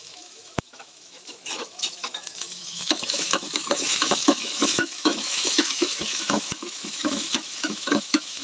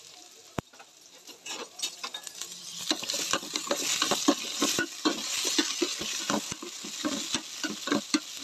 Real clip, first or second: second